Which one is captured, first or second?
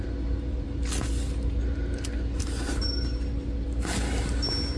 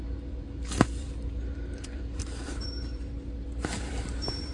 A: first